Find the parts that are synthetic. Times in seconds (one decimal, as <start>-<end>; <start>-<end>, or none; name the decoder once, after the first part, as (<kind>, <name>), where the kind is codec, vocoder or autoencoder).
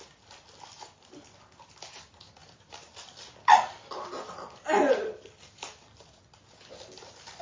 none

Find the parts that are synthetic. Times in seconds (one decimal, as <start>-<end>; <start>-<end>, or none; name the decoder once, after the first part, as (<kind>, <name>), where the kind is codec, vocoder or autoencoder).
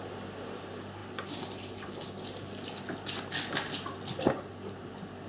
none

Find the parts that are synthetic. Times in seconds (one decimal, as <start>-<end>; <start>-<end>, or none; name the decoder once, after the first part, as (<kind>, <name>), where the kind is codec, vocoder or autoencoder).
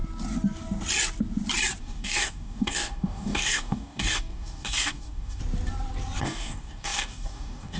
1.8-5.4 (codec, DAC); 6.2-7.8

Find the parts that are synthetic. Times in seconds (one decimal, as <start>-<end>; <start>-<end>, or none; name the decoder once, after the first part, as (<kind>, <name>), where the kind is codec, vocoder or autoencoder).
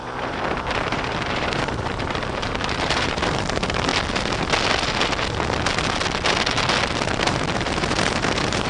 0.0-3.9 (vocoder, BigVGAN v2); 7.2-8.7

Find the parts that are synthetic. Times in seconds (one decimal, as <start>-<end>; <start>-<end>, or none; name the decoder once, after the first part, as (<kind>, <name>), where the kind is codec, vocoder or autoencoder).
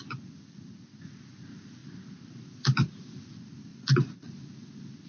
none